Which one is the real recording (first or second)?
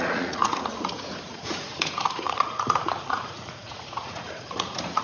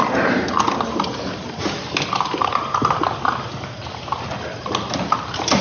second